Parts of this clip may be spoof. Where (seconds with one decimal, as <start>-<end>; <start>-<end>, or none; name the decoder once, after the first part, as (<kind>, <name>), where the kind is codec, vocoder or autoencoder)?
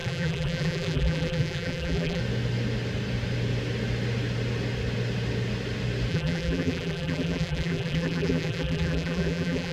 0.0-2.2 (vocoder, BigVGAN v2); 6.1-9.7